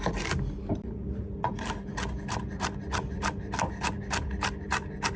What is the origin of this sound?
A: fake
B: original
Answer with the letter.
B